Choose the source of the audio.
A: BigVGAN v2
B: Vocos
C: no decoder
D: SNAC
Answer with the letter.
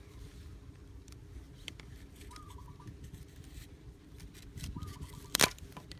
A